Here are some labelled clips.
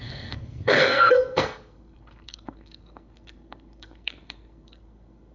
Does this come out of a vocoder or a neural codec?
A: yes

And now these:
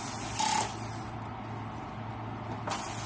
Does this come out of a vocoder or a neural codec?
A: no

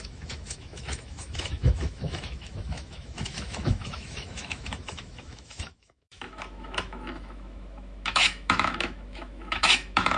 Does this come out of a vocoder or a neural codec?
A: yes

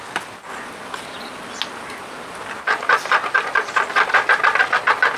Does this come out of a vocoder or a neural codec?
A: no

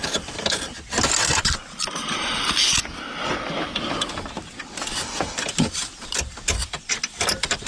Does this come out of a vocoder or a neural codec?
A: no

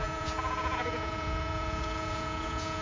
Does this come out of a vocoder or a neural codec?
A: yes